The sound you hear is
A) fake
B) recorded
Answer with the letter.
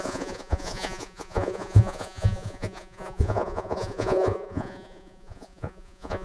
A